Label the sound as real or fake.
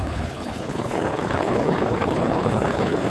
fake